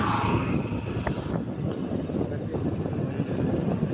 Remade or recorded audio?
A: recorded